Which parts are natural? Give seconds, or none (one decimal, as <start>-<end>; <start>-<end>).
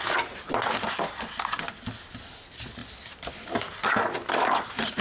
0.0-5.0